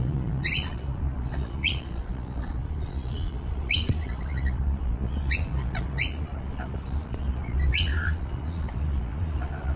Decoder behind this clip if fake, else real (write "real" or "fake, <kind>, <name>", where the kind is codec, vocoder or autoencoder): fake, vocoder, Vocos